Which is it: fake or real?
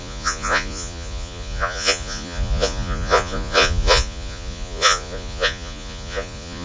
fake